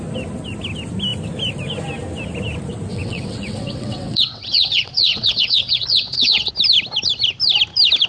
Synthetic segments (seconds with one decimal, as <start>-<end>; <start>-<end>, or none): 2.9-6.5